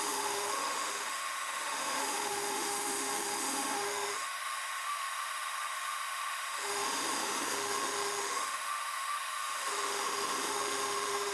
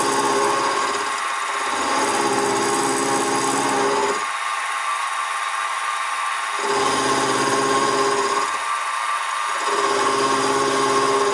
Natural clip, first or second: second